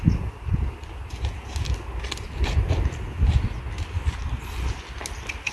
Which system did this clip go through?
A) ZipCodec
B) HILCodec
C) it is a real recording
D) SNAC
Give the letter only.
C